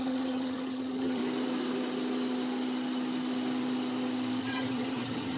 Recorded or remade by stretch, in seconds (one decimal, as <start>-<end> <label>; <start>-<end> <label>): 0.0-1.2 remade; 1.2-4.4 recorded; 4.4-5.4 remade